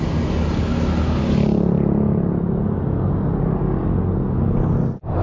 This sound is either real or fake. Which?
real